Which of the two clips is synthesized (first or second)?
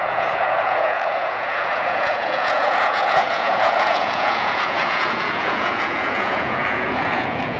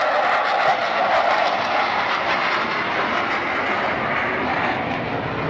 first